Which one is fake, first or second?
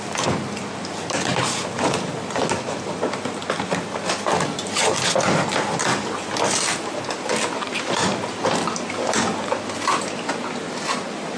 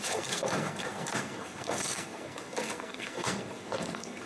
second